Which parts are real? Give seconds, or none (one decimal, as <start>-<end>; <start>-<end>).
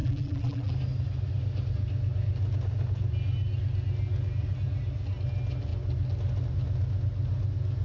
0.7-7.8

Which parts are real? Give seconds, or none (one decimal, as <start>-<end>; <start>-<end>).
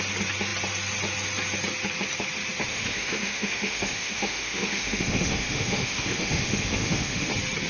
0.0-2.7; 7.3-7.7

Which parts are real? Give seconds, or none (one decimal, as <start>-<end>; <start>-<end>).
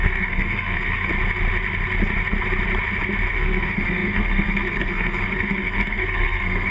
1.1-3.3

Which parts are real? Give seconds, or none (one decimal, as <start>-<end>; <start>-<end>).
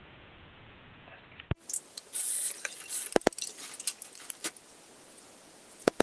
1.1-4.7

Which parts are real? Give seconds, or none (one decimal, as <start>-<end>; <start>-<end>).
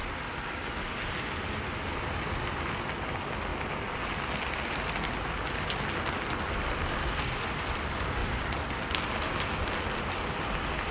0.0-10.9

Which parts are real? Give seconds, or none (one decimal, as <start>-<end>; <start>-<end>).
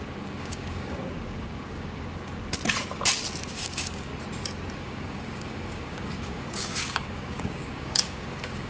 2.4-3.4; 4.1-4.7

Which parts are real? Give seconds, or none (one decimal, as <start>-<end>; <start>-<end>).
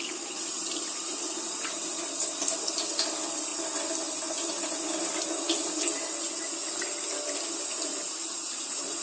0.0-9.0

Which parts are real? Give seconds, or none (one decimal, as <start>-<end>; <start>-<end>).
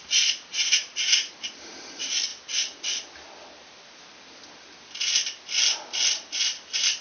0.0-0.5; 1.3-7.0